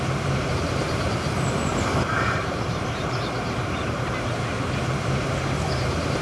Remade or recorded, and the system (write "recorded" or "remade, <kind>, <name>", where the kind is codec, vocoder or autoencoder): remade, vocoder, BigVGAN v2